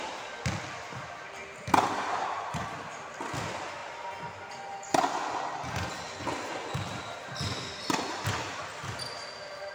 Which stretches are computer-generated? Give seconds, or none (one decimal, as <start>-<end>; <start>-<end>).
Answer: none